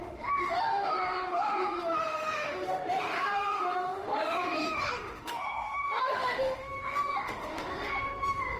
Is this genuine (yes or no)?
no